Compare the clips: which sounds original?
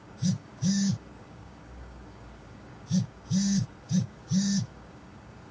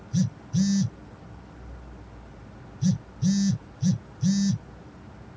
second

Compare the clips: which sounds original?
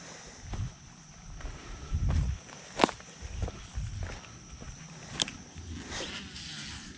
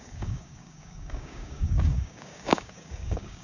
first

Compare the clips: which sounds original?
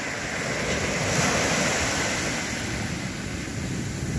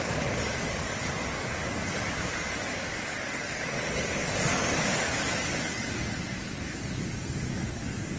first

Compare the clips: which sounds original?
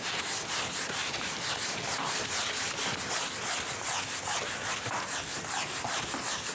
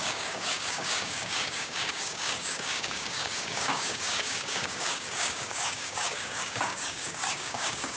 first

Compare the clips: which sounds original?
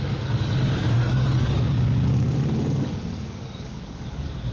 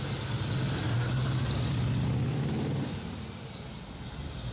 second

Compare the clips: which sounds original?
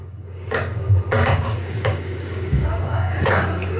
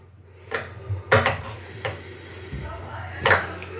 second